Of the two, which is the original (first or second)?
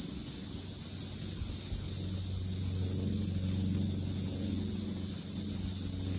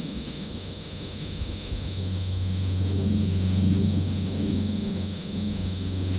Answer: first